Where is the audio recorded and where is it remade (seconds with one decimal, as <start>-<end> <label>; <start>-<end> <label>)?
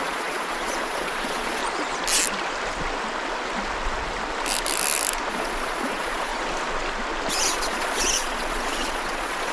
0.0-1.6 remade; 1.6-5.3 recorded; 5.3-6.3 remade; 6.3-7.3 recorded; 7.3-9.5 remade